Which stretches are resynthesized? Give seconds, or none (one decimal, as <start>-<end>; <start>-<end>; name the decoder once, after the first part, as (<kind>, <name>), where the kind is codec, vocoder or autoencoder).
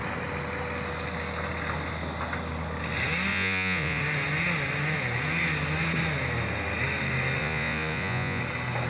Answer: 3.3-4.0 (vocoder, Vocos); 7.4-8.4